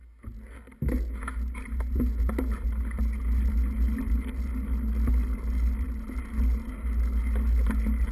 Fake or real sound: real